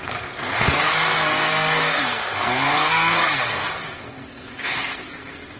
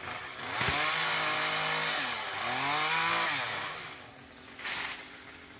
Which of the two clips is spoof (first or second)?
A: first